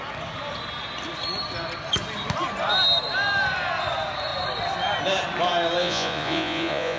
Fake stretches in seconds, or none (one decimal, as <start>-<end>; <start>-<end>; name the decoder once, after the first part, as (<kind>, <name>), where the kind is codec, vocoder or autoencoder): 5.8-7.0 (vocoder, Vocos)